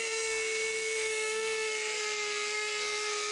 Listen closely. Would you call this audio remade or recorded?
remade